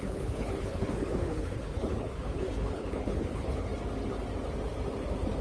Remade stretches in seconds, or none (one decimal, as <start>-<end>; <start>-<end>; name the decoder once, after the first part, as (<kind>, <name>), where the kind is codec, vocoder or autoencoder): 0.0-3.7 (codec, HILCodec)